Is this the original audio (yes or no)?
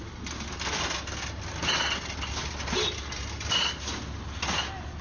yes